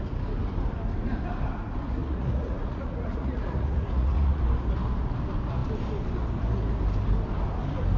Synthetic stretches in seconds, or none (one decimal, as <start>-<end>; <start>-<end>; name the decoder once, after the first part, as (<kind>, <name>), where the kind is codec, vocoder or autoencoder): 2.0-4.4 (vocoder, Vocos)